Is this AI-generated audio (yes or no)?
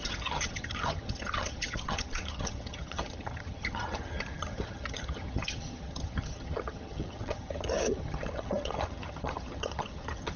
yes